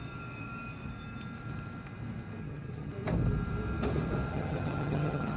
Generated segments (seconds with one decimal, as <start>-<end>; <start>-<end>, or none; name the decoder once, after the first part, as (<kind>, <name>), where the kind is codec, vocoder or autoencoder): 2.4-2.9 (vocoder, HiFi-GAN); 4.3-5.4